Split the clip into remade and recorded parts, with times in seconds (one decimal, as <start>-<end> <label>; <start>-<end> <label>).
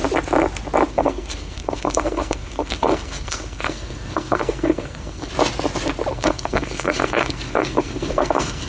0.0-0.9 recorded; 0.9-5.3 remade; 5.3-6.1 recorded; 6.1-8.7 remade